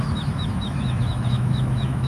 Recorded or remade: remade